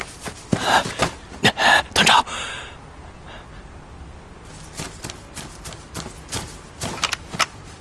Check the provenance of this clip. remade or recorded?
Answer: recorded